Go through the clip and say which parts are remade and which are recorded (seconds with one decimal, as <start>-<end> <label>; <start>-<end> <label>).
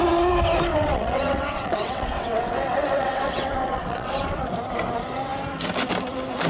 0.0-0.7 recorded; 0.7-4.5 remade; 4.5-6.5 recorded